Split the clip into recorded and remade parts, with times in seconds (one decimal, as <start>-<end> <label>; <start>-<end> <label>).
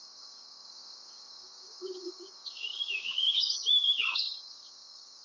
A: 0.0-5.2 remade